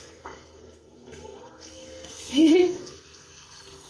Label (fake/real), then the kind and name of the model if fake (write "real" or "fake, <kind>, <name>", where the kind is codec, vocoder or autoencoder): fake, codec, SNAC